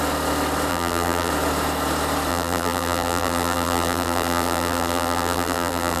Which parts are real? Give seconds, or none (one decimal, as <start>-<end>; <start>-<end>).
0.0-0.7; 1.3-2.3